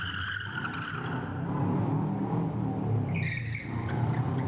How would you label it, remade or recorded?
recorded